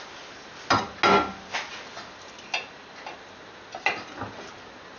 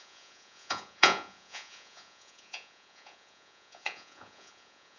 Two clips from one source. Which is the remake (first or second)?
second